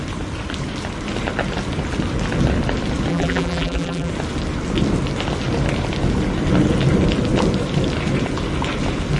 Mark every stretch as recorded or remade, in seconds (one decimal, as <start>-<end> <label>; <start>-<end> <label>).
0.0-3.1 recorded; 3.1-4.1 remade; 4.1-9.2 recorded